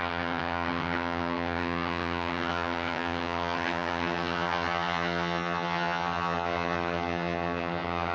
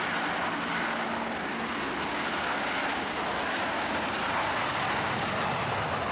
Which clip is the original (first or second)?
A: second